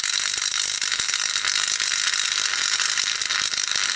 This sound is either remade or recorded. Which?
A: recorded